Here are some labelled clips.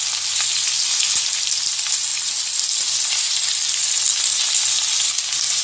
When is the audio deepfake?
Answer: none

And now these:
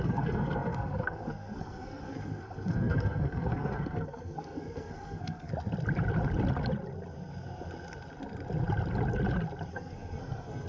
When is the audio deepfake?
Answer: 0.0-5.5 (codec, SNAC); 9.7-10.7

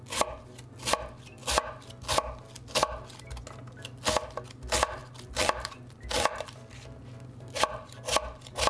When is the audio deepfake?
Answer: 5.0-8.0 (vocoder, BigVGAN v2)

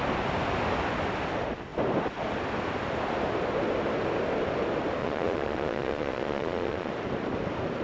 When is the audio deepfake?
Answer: 5.0-6.9 (vocoder, Vocos)

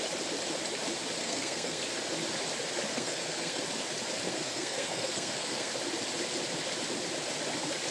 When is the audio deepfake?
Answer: 1.2-1.8 (codec, SNAC); 2.9-3.6; 4.3-5.7

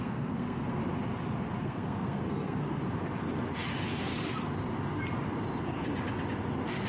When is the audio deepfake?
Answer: 0.0-0.8 (codec, SNAC); 1.6-2.8

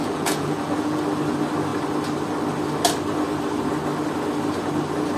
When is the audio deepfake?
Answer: 0.0-1.0 (vocoder, Vocos)

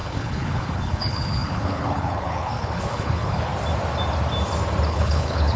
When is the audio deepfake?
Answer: 0.0-3.5 (codec, HILCodec); 4.9-5.6